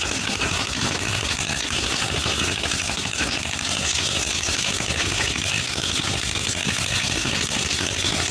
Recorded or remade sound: remade